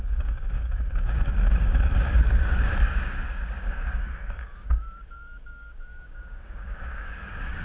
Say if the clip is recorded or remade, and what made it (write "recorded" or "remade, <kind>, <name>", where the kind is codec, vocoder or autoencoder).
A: remade, codec, DAC